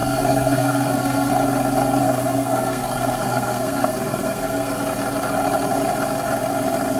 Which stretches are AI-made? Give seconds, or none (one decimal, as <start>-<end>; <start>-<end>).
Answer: 0.0-1.3; 2.0-4.7